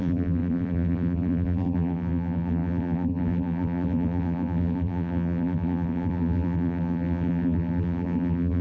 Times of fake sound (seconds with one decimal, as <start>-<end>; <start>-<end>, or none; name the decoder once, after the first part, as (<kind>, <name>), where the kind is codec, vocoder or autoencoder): 0.0-8.6 (vocoder, BigVGAN v2)